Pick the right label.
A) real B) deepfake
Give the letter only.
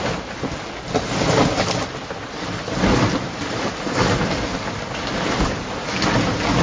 A